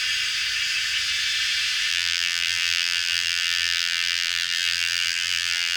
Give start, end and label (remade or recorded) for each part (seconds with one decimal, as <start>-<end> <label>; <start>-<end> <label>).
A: 0.0-1.9 recorded; 1.9-5.8 remade